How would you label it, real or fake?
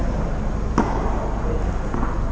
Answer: real